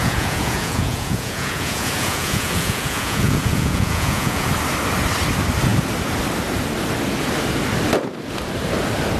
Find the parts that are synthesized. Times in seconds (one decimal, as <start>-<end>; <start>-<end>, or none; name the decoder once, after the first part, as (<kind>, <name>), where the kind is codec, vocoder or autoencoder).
0.0-4.5 (vocoder, Vocos)